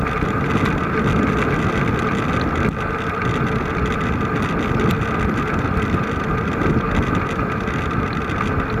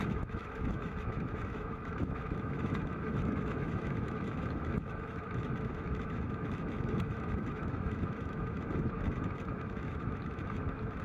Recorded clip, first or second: first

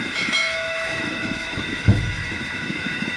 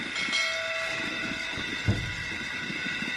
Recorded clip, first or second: second